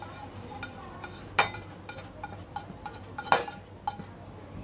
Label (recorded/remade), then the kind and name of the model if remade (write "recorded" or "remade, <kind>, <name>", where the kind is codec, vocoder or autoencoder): recorded